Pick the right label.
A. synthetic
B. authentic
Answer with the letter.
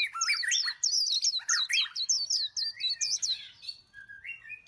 B